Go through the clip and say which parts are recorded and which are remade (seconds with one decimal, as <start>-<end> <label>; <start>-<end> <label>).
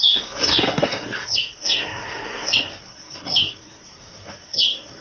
0.0-5.0 remade